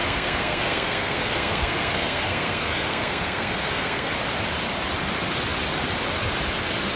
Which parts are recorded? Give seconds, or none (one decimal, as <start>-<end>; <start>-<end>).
4.1-7.0